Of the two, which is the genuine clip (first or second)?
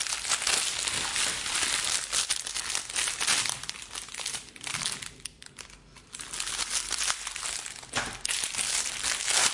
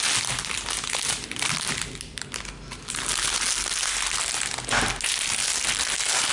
second